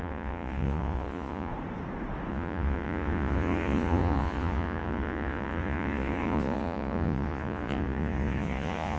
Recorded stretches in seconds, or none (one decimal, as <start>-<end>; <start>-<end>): 1.5-2.3